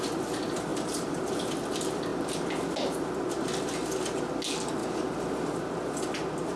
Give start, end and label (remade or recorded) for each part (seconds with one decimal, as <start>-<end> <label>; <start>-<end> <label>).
0.0-0.7 recorded; 0.7-1.4 remade; 1.4-4.8 recorded; 4.8-5.4 remade; 5.4-6.6 recorded